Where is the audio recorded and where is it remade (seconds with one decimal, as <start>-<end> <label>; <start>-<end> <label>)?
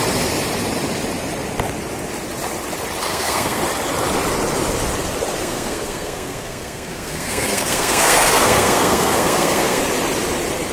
0.0-3.1 recorded; 3.1-3.6 remade; 3.6-5.4 recorded; 5.4-9.8 remade; 9.8-10.7 recorded